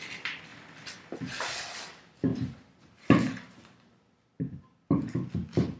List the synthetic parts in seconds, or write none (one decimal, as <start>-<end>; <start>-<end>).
2.3-4.4